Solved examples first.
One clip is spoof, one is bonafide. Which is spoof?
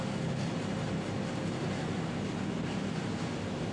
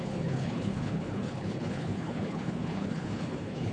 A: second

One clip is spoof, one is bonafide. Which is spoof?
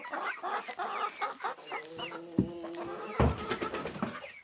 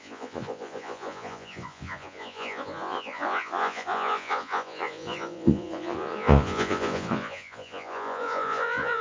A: second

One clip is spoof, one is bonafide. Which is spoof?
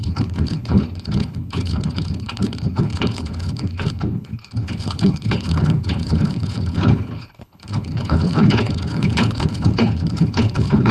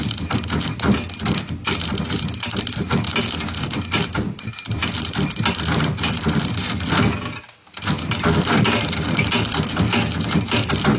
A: first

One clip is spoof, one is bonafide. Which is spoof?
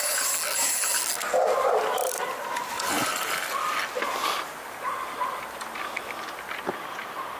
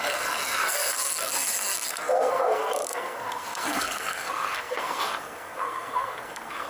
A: second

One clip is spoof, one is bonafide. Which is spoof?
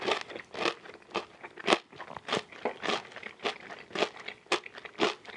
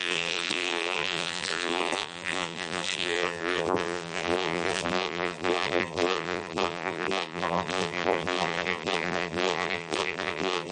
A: second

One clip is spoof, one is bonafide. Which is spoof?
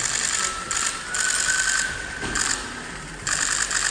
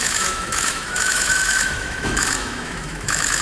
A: second